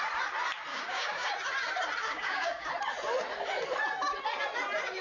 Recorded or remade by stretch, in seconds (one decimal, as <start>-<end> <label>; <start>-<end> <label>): 0.0-0.7 recorded; 0.7-1.3 remade; 1.3-2.0 recorded; 2.0-2.7 remade; 2.7-5.0 recorded